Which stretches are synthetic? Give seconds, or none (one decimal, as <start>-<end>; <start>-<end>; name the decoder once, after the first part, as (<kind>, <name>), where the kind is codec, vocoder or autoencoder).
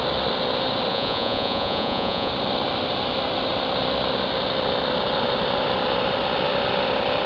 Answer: 0.9-2.3 (vocoder, Vocos)